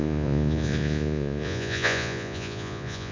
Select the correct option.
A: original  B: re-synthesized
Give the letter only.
B